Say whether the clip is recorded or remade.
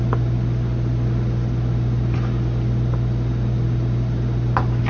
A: recorded